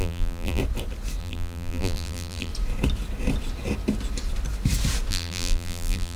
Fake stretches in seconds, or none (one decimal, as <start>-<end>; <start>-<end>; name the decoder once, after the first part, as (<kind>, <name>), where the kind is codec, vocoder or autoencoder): 0.0-0.6 (vocoder, BigVGAN v2); 1.2-2.5; 5.1-6.2